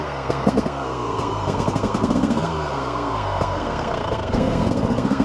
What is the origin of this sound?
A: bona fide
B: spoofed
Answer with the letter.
B